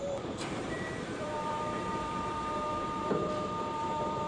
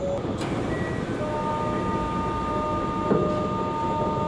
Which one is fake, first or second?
first